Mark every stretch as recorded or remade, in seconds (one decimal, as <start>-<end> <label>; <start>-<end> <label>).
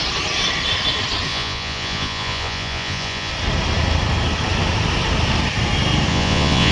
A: 0.0-1.3 recorded; 1.3-3.3 remade; 3.3-6.1 recorded; 6.1-6.7 remade